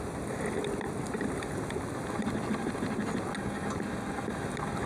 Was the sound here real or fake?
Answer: real